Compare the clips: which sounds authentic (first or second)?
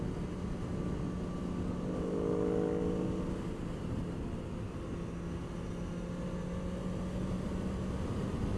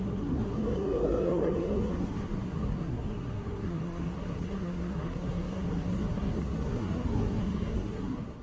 first